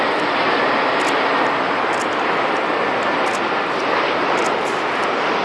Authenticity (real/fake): real